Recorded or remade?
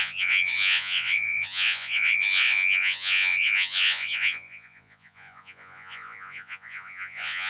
remade